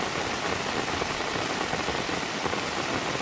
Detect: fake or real real